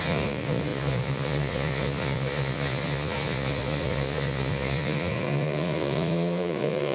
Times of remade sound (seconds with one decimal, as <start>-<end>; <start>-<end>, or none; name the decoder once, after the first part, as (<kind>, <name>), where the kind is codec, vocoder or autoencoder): 0.0-6.9 (vocoder, Vocos)